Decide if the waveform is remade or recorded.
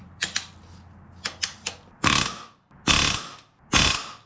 recorded